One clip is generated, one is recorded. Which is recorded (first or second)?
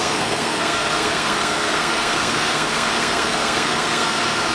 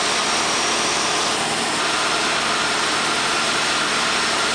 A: second